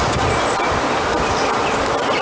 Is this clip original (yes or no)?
yes